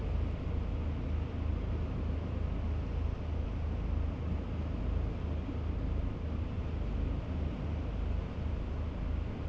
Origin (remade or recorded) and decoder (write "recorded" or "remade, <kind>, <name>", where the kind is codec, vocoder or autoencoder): recorded